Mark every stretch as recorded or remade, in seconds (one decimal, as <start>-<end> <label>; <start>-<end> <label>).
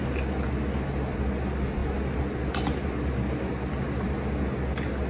0.0-5.1 recorded